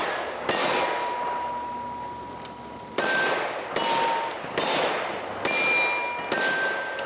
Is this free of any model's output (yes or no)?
yes